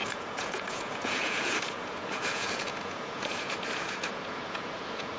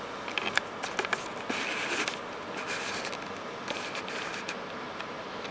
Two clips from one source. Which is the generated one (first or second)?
first